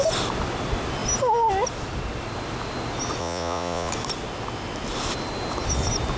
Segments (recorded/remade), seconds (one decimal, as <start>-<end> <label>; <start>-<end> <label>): 0.0-3.2 recorded; 3.2-3.9 remade; 3.9-6.2 recorded